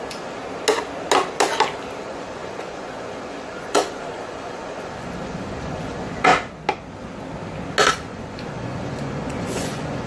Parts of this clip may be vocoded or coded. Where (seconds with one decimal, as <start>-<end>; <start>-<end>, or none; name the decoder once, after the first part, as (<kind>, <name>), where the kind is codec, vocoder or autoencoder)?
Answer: 0.0-0.4 (vocoder, Vocos); 2.0-6.3; 7.9-10.1